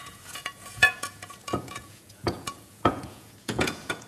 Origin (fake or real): fake